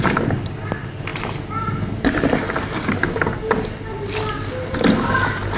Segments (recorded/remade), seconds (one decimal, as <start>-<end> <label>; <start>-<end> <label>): 0.0-5.6 recorded